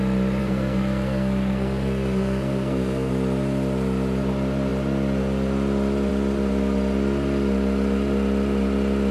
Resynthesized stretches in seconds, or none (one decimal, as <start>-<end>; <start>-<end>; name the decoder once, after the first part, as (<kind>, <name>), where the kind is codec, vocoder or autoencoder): 0.4-3.1 (codec, SNAC)